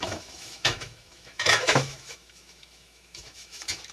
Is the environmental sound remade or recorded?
remade